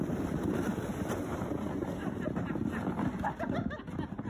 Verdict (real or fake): real